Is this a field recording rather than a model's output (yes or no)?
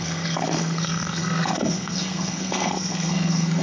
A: no